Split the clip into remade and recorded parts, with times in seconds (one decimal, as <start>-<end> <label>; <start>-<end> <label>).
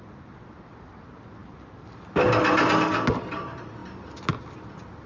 0.0-5.1 recorded